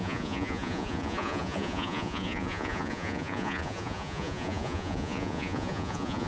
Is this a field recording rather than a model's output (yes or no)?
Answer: no